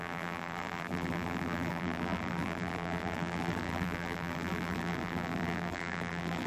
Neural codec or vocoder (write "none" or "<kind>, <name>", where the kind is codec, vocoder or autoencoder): vocoder, BigVGAN v2